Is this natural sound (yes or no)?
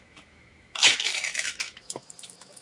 no